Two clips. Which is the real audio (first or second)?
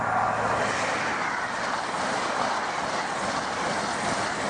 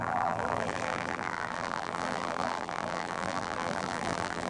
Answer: first